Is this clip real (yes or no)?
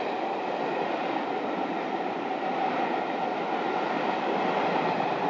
yes